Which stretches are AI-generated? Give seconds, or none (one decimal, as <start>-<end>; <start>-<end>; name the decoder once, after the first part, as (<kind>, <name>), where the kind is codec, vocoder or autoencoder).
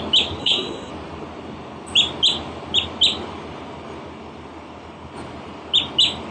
0.4-0.9 (codec, SNAC)